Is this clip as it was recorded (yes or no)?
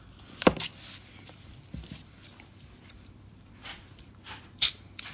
no